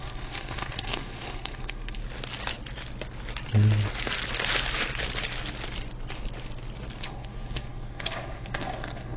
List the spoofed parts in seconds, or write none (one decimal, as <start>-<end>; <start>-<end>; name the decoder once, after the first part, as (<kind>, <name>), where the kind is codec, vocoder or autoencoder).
0.0-2.0 (codec, SNAC); 7.0-9.2

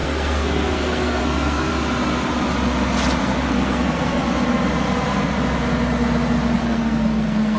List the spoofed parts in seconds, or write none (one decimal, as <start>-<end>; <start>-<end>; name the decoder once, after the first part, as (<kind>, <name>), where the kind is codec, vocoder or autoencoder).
0.0-1.7 (codec, SNAC); 3.2-4.2; 6.6-7.6

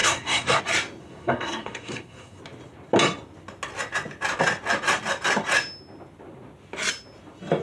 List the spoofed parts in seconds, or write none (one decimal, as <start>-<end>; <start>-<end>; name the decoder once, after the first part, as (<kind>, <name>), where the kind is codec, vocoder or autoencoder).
0.0-0.6 (codec, SNAC); 1.0-2.4

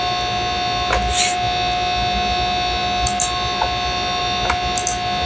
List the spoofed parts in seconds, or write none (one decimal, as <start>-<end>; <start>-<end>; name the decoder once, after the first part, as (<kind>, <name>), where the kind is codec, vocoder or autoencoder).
none

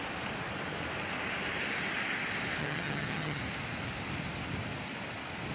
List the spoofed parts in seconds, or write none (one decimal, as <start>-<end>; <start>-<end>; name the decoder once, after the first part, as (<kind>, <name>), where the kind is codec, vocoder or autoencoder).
2.6-3.4 (vocoder, HiFi-GAN)